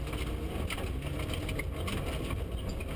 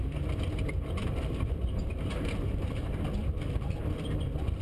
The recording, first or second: first